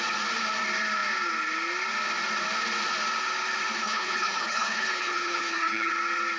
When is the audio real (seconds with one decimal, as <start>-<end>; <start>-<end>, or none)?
0.0-3.8; 5.9-6.4